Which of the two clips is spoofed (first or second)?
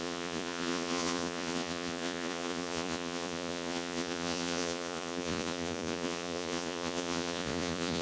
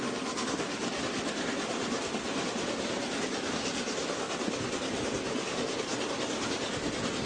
first